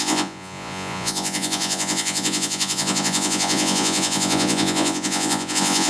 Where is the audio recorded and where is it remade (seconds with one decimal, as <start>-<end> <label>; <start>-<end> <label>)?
0.0-5.9 remade